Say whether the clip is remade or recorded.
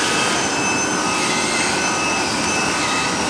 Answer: recorded